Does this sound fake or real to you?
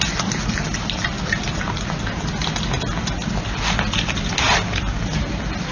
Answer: real